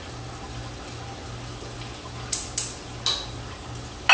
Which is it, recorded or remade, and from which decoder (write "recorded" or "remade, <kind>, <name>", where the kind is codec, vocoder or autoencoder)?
recorded